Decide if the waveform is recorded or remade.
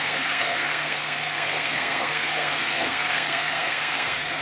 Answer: remade